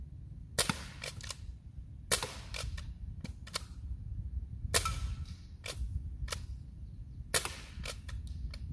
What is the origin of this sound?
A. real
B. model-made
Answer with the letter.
A